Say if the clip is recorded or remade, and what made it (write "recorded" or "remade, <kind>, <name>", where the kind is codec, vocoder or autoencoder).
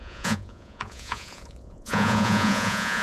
remade, vocoder, Vocos